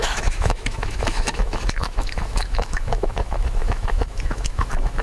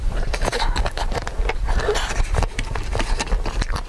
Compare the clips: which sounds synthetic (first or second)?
first